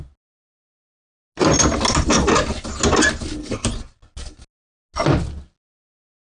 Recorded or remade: recorded